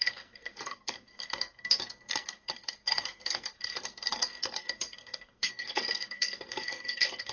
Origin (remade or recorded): remade